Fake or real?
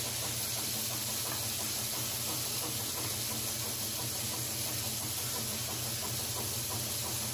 real